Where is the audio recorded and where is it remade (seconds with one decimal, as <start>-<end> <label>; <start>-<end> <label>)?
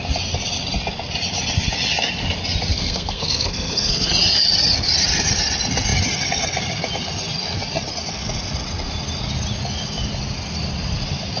0.0-2.7 recorded; 2.7-4.1 remade; 4.1-11.4 recorded